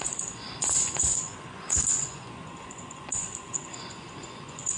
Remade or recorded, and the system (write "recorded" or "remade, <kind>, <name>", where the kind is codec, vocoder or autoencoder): remade, vocoder, Vocos